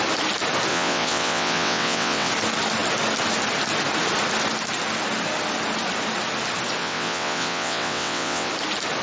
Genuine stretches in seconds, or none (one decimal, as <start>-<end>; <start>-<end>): 0.0-0.7; 2.3-6.8; 8.5-9.0